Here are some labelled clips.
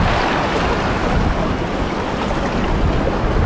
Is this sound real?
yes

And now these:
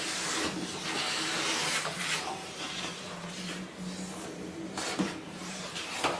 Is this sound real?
no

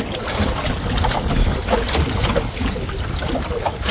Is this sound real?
yes